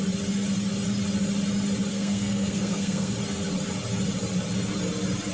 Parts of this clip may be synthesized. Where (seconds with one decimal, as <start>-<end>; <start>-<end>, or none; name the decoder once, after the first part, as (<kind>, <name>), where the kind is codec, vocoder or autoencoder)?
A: 1.9-3.1 (codec, SNAC)